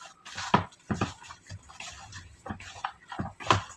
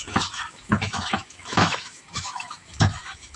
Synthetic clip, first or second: second